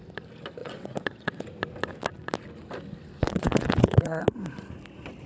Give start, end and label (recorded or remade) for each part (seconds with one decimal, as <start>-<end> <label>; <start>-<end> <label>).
0.0-0.6 recorded; 0.6-1.4 remade; 1.4-3.2 recorded; 3.2-4.2 remade; 4.2-5.3 recorded